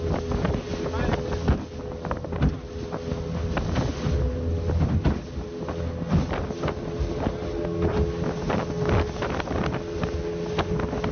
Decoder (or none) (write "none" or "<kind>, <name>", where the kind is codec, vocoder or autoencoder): none